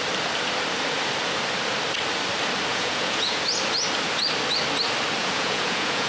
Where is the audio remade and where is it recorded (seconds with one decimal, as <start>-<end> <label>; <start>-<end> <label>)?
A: 0.0-2.7 recorded; 2.7-3.4 remade; 3.4-5.2 recorded; 5.2-6.1 remade